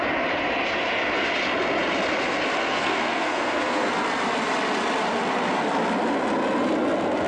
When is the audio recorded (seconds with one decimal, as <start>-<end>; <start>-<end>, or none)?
0.0-2.6; 3.9-7.3